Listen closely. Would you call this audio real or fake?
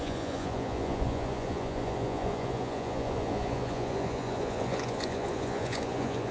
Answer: fake